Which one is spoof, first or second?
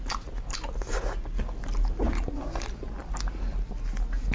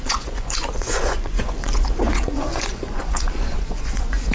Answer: second